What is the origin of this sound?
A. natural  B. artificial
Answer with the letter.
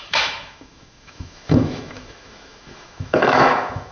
B